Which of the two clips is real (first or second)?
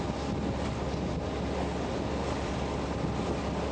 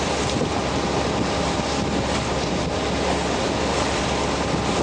first